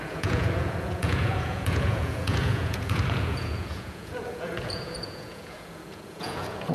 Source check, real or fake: fake